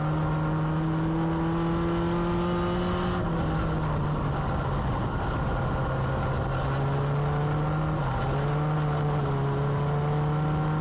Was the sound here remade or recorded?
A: recorded